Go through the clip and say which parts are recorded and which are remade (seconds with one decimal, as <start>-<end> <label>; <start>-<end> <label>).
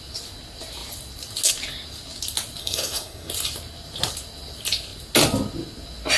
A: 0.0-2.6 recorded; 2.6-3.3 remade; 3.3-6.2 recorded